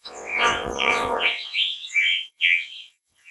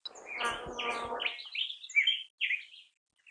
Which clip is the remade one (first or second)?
first